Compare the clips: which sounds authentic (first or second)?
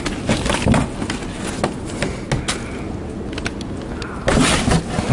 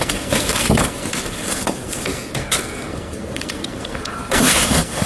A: first